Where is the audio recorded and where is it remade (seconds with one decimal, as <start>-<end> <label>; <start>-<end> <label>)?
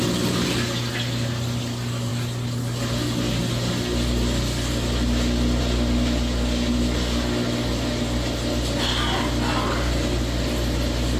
0.0-11.2 recorded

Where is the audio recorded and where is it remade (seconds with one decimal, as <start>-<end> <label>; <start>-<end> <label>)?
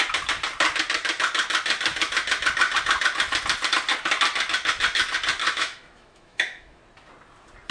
0.0-5.4 recorded; 5.4-6.8 remade; 6.8-7.7 recorded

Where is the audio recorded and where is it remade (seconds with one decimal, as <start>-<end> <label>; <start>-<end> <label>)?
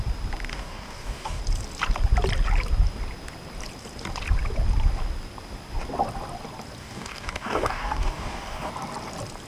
0.0-0.5 recorded; 0.5-1.4 remade; 1.4-6.8 recorded; 6.8-8.7 remade; 8.7-9.5 recorded